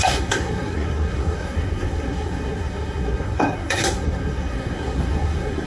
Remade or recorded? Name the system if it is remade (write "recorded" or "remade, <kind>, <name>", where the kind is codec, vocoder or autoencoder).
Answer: remade, codec, SNAC